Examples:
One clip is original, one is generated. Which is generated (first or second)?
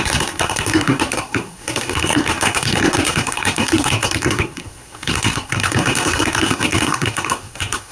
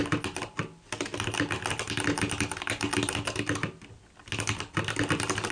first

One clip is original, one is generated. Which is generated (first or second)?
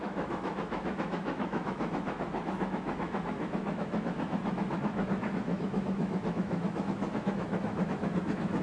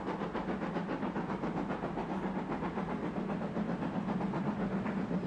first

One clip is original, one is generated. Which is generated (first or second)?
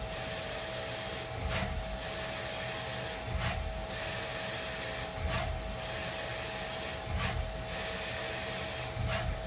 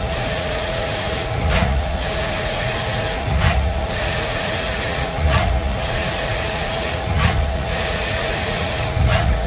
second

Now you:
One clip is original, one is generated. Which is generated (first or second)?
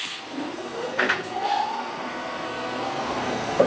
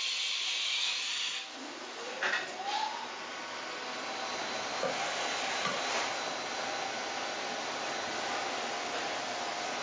first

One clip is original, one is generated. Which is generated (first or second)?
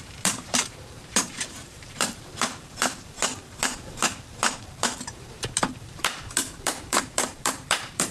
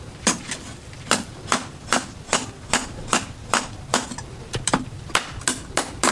first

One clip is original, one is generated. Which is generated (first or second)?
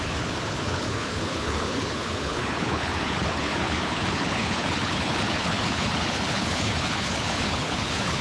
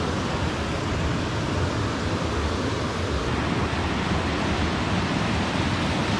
first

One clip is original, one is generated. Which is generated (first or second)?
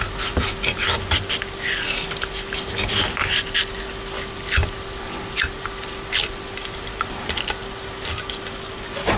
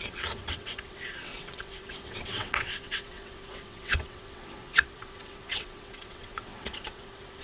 second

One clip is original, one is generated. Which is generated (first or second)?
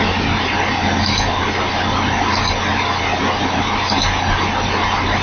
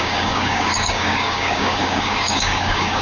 second